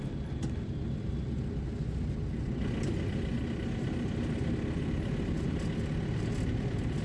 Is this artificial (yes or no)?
no